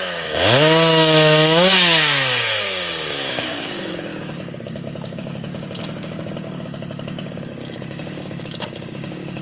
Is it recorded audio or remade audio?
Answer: remade